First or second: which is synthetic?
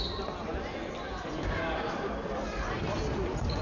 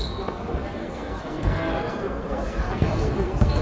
second